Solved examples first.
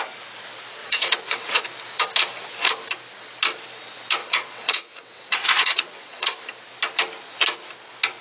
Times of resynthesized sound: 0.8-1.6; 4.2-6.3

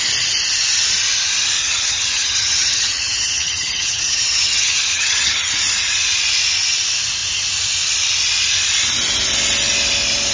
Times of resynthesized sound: 1.6-5.5

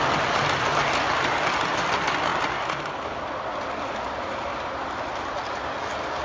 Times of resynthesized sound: none

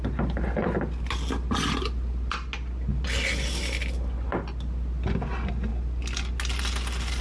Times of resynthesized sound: none

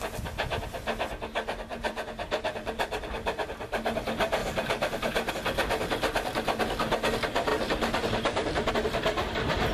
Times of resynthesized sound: 1.7-3.3; 4.4-5.3; 7.5-8.7

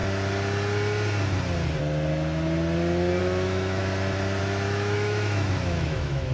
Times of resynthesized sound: 3.2-3.8; 4.4-6.3

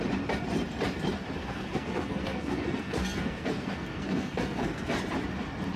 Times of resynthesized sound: 1.4-4.9